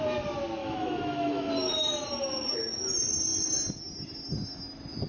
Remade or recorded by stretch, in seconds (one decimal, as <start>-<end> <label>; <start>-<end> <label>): 0.0-0.6 recorded; 0.6-1.5 remade; 1.5-5.1 recorded